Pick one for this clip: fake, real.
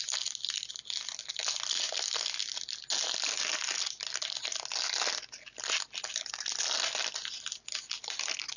real